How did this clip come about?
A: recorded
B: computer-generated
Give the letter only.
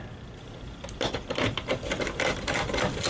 B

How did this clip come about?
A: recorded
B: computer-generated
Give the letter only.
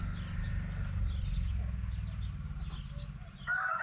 A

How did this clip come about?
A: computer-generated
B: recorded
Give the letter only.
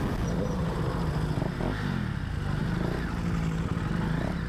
B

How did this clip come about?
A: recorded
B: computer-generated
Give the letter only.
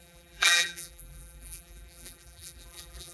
B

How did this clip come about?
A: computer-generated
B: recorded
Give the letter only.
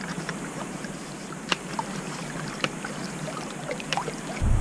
A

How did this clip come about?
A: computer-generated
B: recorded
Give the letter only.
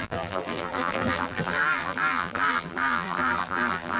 A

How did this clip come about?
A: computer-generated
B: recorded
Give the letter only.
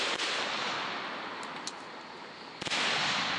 A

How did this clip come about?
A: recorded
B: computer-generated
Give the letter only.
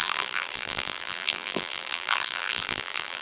B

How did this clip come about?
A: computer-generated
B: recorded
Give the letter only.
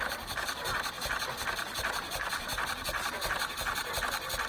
A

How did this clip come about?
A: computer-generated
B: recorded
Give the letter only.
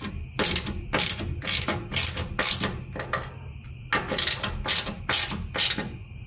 B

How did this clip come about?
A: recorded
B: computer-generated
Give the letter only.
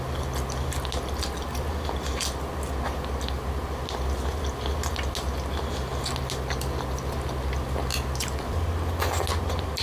A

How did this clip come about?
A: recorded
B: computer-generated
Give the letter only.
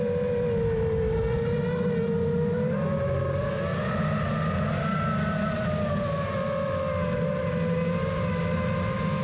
A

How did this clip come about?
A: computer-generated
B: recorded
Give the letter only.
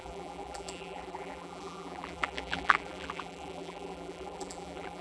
A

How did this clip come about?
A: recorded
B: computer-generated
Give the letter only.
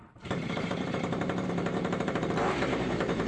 B